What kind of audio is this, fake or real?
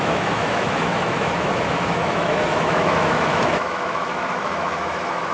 fake